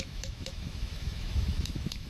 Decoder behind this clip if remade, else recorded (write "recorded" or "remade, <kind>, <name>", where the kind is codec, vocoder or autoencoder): remade, autoencoder, DAC-VAE